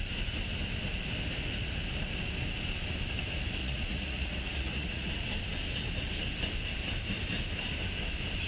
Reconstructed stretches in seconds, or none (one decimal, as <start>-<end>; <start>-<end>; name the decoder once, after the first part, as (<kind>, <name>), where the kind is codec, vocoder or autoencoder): 3.6-5.1 (vocoder, Vocos)

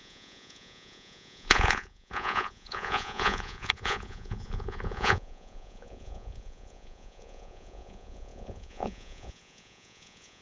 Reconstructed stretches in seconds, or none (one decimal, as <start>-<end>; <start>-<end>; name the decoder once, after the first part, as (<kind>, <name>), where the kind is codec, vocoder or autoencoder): 0.0-10.4 (vocoder, Vocos)

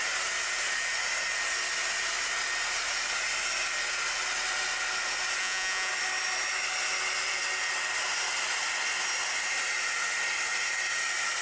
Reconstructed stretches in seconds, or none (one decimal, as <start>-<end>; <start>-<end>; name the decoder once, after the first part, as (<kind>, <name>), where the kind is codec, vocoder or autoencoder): 5.4-5.9 (vocoder, Vocos)

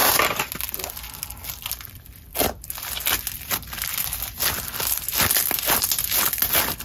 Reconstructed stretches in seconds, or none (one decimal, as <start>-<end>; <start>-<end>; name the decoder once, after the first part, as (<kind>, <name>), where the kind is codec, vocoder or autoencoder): none

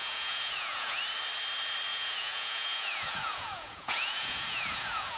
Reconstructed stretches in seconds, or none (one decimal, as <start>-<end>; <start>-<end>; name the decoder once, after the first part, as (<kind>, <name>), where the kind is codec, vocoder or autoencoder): 0.0-1.0 (vocoder, Vocos); 1.9-5.2

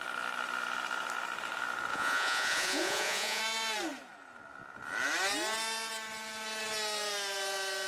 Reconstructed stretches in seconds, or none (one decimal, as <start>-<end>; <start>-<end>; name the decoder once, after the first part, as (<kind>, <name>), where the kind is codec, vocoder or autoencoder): 1.9-3.4 (vocoder, Vocos)